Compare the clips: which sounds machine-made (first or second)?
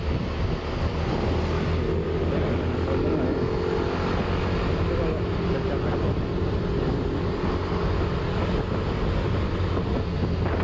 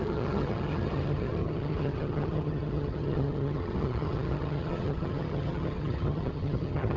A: second